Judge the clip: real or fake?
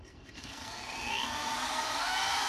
fake